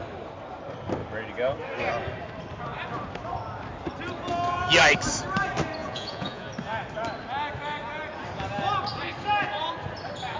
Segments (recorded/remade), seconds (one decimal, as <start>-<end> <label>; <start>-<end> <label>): 0.0-5.8 recorded; 5.8-6.5 remade; 6.5-10.4 recorded